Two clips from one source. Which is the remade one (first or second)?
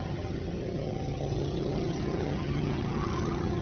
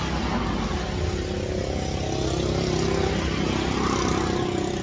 first